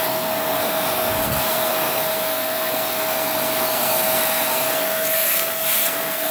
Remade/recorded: remade